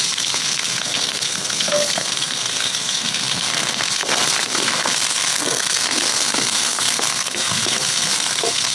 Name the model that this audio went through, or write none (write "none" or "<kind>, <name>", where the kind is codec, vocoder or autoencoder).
codec, SNAC